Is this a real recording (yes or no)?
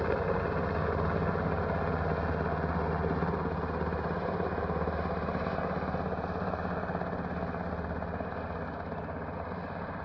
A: yes